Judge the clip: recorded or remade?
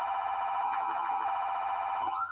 remade